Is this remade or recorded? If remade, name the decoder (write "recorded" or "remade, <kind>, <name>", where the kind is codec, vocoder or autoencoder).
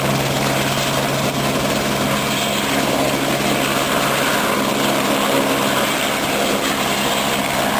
recorded